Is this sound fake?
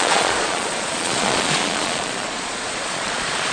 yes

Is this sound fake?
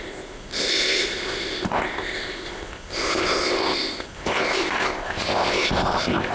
yes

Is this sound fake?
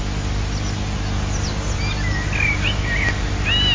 no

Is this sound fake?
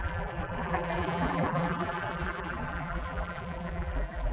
yes